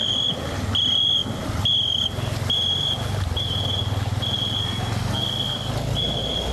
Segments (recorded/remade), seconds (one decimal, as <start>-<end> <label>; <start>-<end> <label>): 0.0-4.6 recorded; 4.6-5.7 remade; 5.7-6.5 recorded